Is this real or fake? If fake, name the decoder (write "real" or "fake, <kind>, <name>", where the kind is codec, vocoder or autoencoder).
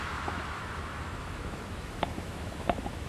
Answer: fake, autoencoder, DAC-VAE